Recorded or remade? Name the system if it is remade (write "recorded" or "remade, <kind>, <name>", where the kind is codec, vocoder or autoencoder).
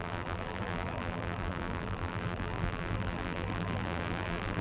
remade, vocoder, BigVGAN v2